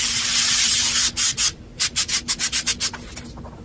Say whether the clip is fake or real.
real